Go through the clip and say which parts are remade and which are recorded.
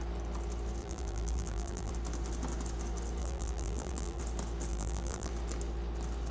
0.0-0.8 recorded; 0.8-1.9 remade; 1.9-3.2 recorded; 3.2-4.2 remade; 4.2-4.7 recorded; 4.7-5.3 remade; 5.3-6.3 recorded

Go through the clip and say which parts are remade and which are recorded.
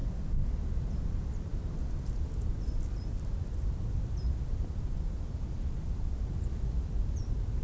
0.0-7.6 remade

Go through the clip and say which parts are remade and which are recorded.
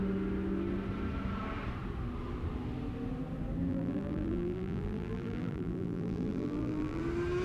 0.0-3.7 recorded; 3.7-7.0 remade; 7.0-7.4 recorded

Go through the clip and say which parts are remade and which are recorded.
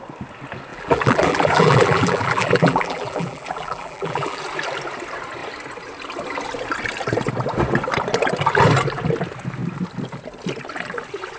0.0-0.7 recorded; 0.7-4.4 remade; 4.4-11.4 recorded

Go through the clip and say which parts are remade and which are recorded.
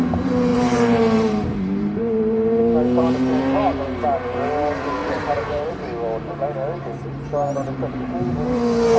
0.0-0.5 recorded; 0.5-2.6 remade; 2.6-5.0 recorded; 5.0-5.7 remade; 5.7-7.0 recorded; 7.0-8.0 remade; 8.0-9.0 recorded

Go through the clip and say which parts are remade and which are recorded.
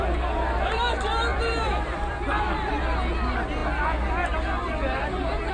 0.0-1.3 recorded; 1.3-2.8 remade; 2.8-5.5 recorded